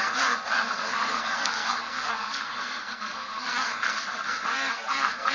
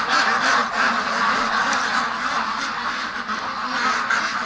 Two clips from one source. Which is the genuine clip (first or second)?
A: second